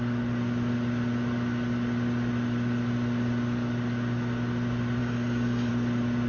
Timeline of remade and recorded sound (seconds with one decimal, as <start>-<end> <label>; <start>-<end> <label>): 0.0-5.0 recorded; 5.0-5.7 remade; 5.7-6.3 recorded